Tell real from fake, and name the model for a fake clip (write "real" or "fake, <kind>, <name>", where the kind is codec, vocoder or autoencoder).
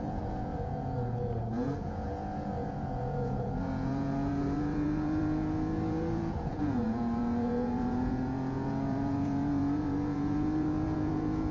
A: fake, vocoder, Vocos